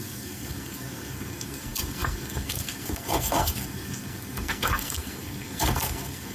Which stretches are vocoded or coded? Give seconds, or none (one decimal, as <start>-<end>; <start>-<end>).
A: 0.0-6.3